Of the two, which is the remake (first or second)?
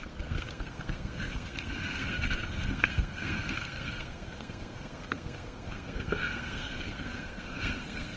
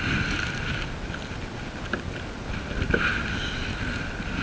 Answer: first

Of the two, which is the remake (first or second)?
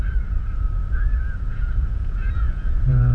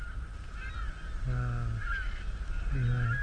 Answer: first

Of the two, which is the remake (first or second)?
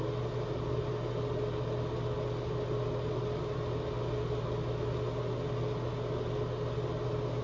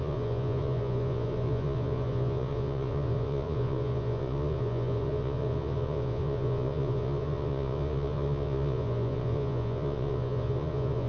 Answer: second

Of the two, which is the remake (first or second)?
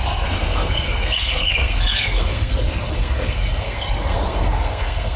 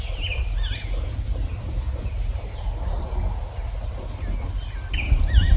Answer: first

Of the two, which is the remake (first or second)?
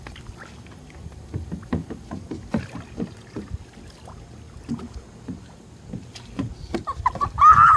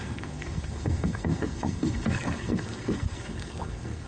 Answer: second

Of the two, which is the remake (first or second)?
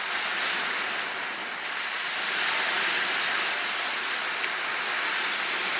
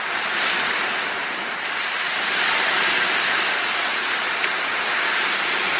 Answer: second